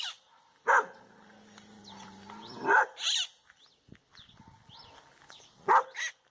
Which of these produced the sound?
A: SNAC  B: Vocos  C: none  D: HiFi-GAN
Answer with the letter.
C